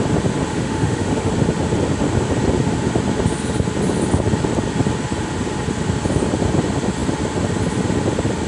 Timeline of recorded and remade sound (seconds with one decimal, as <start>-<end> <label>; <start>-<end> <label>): 0.0-0.5 recorded; 0.5-1.3 remade; 1.3-8.5 recorded